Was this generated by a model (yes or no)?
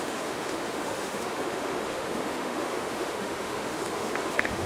yes